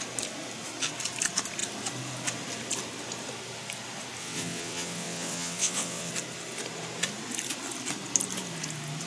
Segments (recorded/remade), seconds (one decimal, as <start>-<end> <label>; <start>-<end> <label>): 0.0-4.2 recorded; 4.2-6.1 remade; 6.1-9.1 recorded